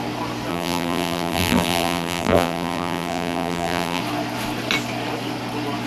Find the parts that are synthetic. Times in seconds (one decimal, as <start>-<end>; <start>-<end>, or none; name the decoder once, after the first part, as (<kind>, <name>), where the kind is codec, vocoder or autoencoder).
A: 0.5-4.0 (vocoder, BigVGAN v2)